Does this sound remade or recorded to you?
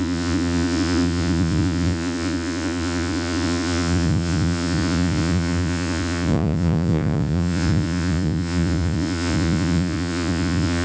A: remade